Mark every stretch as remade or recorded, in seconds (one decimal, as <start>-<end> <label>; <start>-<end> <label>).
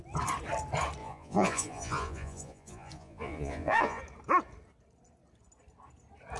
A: 0.0-1.0 recorded; 1.0-4.0 remade; 4.0-6.4 recorded